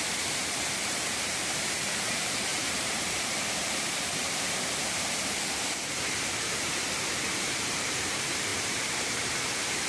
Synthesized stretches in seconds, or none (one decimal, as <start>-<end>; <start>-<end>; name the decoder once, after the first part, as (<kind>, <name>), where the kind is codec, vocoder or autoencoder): 0.0-9.9 (vocoder, BigVGAN v2)